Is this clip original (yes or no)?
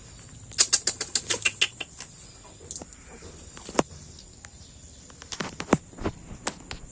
yes